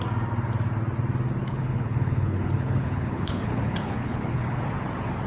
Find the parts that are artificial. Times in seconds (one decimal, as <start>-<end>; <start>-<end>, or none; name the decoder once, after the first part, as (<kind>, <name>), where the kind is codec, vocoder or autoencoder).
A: 1.4-4.6 (codec, HILCodec)